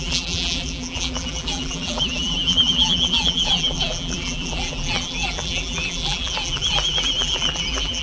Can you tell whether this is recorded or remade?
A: remade